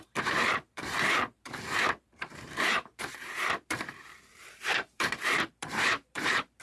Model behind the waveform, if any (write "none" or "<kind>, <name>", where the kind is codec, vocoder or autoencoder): vocoder, BigVGAN v2